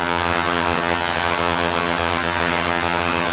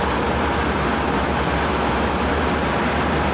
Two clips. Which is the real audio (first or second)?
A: second